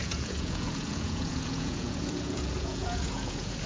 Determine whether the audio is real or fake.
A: fake